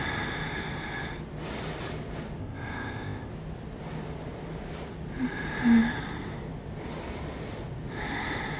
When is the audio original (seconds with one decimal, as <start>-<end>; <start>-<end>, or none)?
0.0-2.4; 3.3-8.6